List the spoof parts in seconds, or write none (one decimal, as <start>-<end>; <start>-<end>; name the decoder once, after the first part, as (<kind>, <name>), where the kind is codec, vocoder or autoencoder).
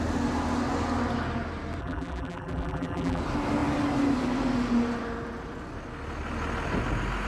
1.8-3.2 (vocoder, BigVGAN v2)